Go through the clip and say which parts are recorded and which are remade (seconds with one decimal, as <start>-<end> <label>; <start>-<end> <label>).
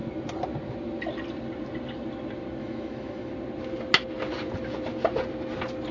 0.0-2.6 recorded; 2.6-3.3 remade; 3.3-5.9 recorded